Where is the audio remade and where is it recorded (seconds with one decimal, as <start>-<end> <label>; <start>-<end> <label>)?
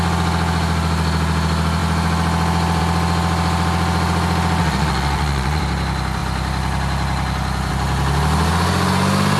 0.0-4.6 recorded; 4.6-5.6 remade; 5.6-9.4 recorded